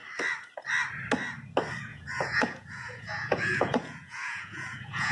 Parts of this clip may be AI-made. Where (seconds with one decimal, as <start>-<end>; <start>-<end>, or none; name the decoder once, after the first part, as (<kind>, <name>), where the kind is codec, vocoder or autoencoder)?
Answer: 1.9-5.1 (vocoder, Vocos)